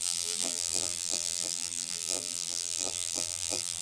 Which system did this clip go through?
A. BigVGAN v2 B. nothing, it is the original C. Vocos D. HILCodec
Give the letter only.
A